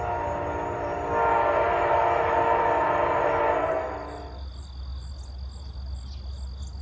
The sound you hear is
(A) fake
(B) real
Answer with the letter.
B